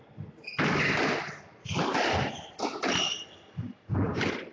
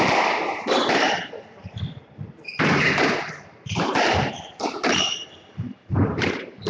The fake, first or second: second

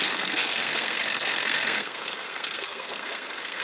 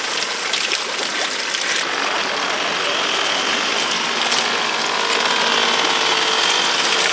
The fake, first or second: first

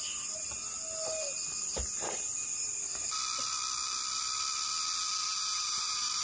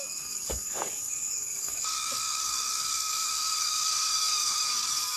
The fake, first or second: second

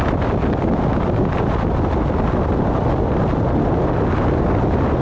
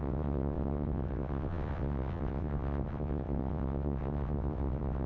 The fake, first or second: second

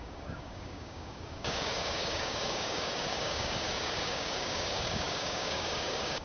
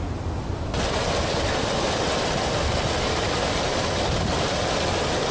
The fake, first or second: first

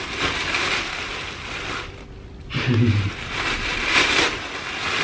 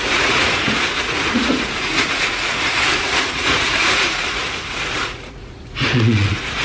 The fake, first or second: second